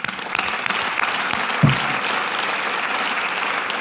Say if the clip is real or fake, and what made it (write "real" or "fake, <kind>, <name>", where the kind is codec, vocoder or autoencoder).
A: real